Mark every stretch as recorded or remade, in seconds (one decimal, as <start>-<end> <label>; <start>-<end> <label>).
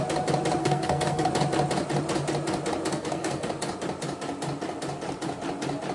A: 0.0-0.6 recorded; 0.6-1.3 remade; 1.3-2.9 recorded; 2.9-3.5 remade; 3.5-5.9 recorded